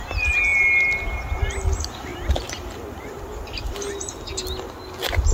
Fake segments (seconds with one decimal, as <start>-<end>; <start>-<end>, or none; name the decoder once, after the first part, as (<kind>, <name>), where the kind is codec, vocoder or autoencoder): 2.1-3.9 (vocoder, BigVGAN v2)